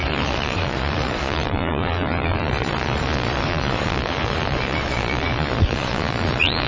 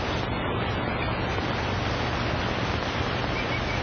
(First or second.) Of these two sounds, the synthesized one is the first